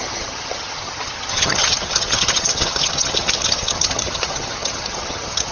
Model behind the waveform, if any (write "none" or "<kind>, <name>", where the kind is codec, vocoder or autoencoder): vocoder, HiFi-GAN